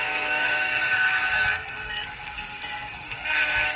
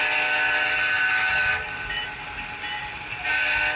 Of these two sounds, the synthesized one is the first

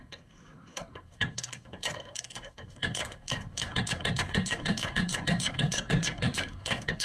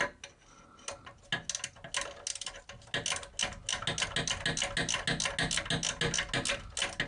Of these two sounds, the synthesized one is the first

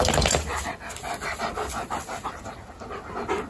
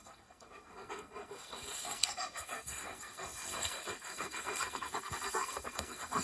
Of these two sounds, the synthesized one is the second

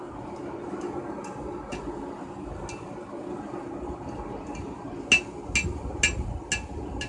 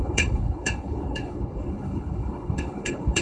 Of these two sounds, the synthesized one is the second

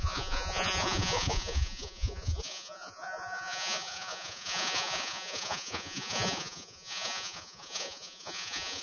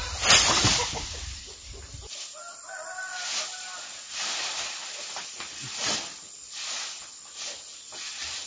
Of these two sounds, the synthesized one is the first